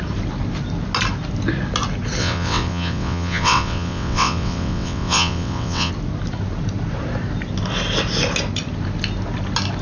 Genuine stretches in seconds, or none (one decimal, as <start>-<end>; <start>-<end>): 0.0-2.2; 5.9-9.8